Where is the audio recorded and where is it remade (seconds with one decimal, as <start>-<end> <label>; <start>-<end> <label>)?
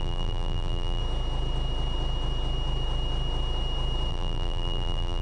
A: 0.0-1.0 remade; 1.0-4.1 recorded; 4.1-5.2 remade